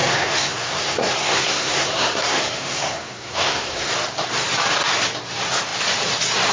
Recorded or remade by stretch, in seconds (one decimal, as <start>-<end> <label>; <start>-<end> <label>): 0.0-3.9 remade; 3.9-6.5 recorded